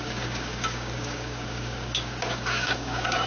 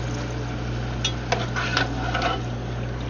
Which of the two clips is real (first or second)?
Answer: second